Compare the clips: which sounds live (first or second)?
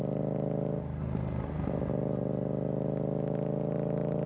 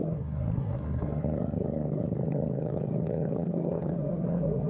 first